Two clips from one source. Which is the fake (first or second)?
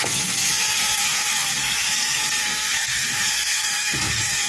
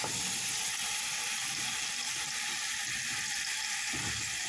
first